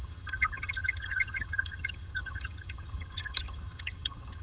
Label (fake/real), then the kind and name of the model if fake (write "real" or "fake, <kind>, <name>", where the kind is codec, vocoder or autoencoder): fake, vocoder, HiFi-GAN